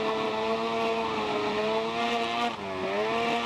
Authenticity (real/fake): real